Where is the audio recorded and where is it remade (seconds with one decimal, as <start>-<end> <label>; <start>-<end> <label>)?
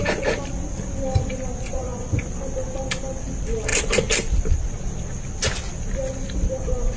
0.0-1.7 recorded; 1.7-2.3 remade; 2.3-7.0 recorded